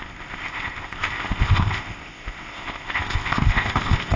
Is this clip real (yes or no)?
no